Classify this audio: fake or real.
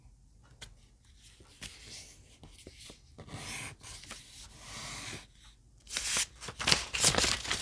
real